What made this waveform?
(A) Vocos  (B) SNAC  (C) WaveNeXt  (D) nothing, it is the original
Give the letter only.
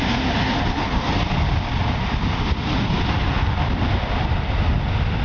D